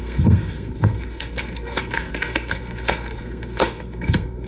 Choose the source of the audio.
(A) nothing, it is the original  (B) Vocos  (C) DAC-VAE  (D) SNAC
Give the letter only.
D